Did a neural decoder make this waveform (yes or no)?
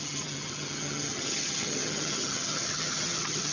yes